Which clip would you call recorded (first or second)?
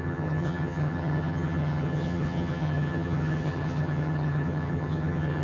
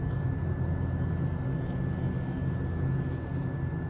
second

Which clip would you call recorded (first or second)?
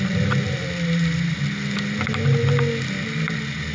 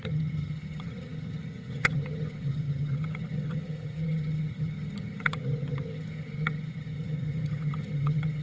first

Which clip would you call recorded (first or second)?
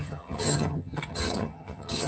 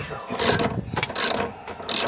second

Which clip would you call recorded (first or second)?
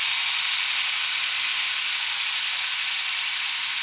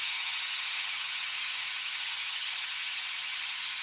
first